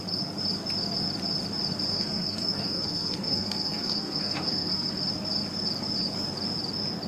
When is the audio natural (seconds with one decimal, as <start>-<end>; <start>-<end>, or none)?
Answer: 0.0-1.9; 5.0-7.1

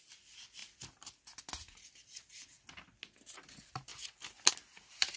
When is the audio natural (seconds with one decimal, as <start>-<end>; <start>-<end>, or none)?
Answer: 0.0-5.2

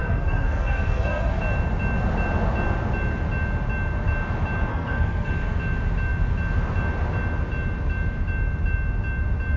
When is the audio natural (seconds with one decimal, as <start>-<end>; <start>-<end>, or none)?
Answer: 1.4-4.7; 5.3-9.6

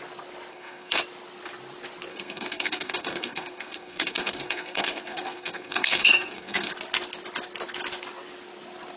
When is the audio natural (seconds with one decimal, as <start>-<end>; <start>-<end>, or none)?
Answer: 0.0-0.5; 1.0-2.1; 6.7-9.0

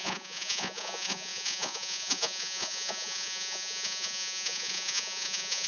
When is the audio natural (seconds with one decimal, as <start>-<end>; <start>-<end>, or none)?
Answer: none

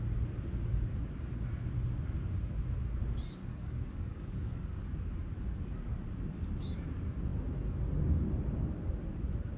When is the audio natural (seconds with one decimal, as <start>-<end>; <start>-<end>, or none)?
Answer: 0.0-3.5; 4.8-9.6

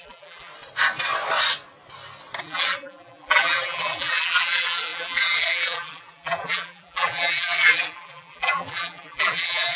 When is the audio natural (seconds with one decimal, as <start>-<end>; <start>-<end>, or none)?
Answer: 0.5-2.4